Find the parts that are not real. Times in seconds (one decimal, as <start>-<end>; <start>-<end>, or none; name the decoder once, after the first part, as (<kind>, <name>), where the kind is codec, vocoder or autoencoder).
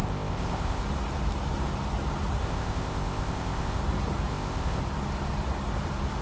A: 0.0-0.8 (codec, ZipCodec); 2.4-3.8; 4.3-4.8